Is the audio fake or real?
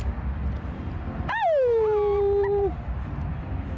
fake